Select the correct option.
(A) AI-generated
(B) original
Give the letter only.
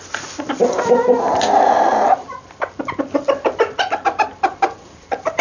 A